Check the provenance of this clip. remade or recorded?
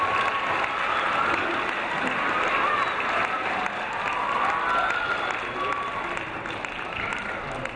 recorded